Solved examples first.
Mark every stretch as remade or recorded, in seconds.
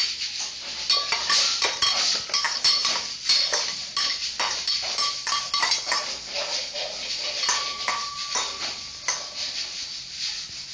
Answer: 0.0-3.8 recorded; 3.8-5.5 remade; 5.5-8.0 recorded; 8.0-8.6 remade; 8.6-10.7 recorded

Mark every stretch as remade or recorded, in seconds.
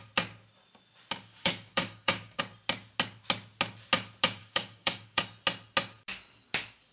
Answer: 0.0-1.3 recorded; 1.3-2.4 remade; 2.4-4.4 recorded; 4.4-5.2 remade; 5.2-6.9 recorded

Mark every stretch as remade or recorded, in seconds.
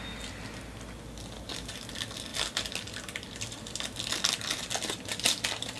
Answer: 0.0-5.8 recorded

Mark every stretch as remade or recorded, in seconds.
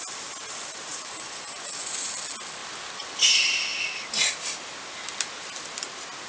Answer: 0.0-0.9 recorded; 0.9-2.1 remade; 2.1-6.3 recorded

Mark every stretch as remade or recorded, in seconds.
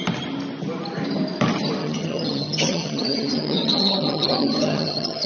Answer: 0.0-1.8 recorded; 1.8-5.3 remade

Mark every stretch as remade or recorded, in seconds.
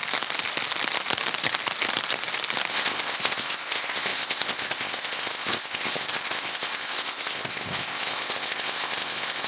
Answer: 0.0-2.7 recorded; 2.7-9.5 remade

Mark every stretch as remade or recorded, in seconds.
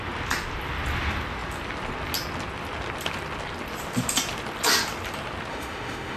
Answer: 0.0-5.5 recorded; 5.5-6.2 remade